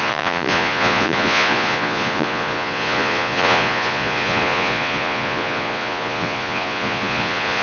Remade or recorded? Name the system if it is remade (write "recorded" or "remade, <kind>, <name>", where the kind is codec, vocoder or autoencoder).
remade, vocoder, Vocos